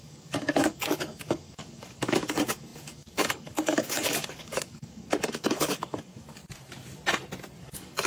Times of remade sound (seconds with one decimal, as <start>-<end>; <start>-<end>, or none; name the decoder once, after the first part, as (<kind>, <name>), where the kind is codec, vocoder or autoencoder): 0.0-6.4 (codec, DAC); 7.6-8.1